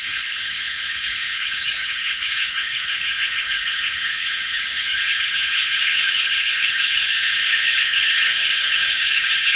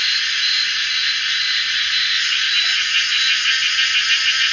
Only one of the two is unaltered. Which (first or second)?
second